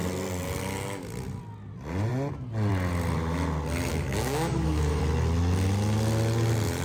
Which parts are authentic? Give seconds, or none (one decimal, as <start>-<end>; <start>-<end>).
0.0-3.9; 5.0-6.8